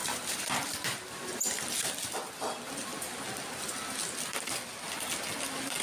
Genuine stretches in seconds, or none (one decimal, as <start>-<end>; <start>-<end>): 1.6-5.8